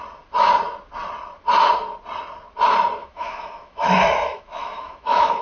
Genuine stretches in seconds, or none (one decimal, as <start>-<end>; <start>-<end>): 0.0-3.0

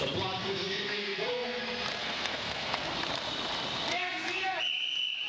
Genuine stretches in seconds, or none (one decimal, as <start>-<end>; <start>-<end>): 0.0-0.4; 1.6-2.0; 2.8-3.9; 4.6-5.3

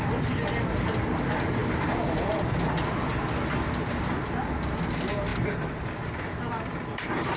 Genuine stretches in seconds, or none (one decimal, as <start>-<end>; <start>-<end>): 0.0-7.4

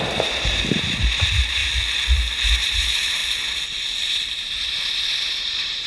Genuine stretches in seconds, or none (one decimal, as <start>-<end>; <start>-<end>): 1.6-2.5; 3.2-4.4

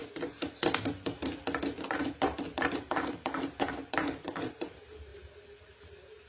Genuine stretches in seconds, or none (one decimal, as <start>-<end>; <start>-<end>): 0.0-2.6; 5.1-5.6